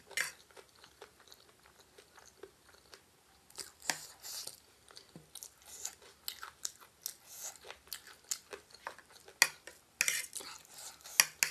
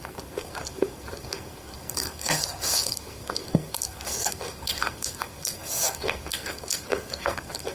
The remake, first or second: second